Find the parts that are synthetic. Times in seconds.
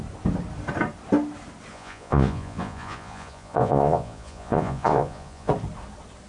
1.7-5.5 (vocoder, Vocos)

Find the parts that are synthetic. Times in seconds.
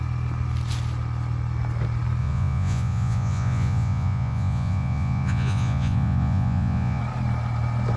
2.2-7.0 (vocoder, Vocos)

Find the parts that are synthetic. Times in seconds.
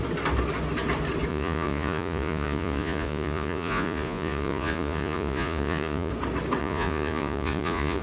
1.3-6.1 (vocoder, Vocos); 6.6-8.0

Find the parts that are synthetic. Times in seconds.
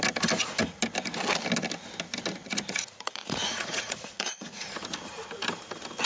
2.4-4.7 (vocoder, Vocos)